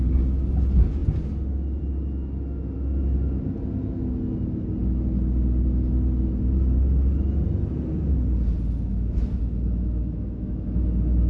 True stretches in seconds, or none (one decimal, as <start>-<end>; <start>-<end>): 0.0-8.9